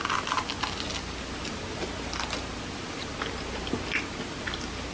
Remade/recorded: recorded